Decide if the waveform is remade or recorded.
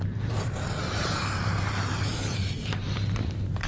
remade